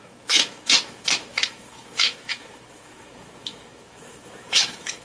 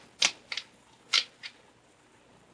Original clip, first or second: second